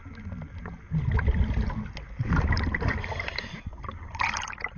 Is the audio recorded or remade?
recorded